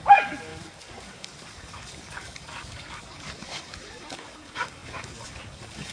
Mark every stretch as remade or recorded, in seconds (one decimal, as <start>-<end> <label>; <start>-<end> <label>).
0.0-5.9 remade